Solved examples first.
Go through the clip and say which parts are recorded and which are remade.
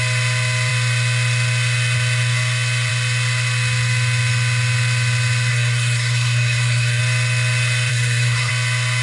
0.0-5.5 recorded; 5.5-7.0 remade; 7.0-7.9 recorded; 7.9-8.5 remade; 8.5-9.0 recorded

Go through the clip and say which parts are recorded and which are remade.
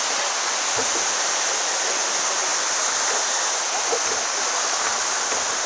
0.0-5.7 recorded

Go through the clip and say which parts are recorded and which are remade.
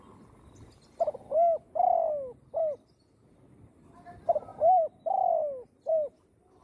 0.0-6.6 recorded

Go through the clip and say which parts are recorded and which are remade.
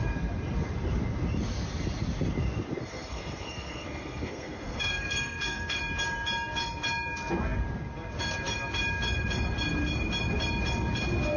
0.0-2.8 recorded; 2.8-5.8 remade; 5.8-11.4 recorded